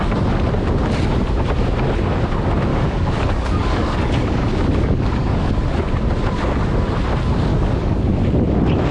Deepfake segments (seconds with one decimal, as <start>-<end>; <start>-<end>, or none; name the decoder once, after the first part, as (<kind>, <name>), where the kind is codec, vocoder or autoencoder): 2.7-5.5 (codec, DAC); 7.5-8.1